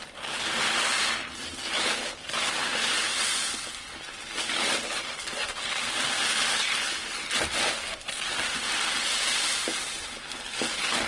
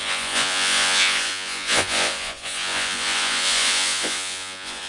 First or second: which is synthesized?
second